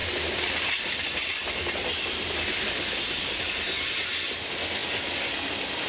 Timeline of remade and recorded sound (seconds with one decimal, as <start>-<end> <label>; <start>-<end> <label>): 0.0-5.9 recorded